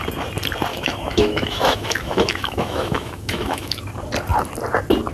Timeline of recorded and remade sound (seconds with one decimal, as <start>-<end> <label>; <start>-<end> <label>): 0.0-0.7 recorded; 0.7-3.8 remade; 3.8-5.1 recorded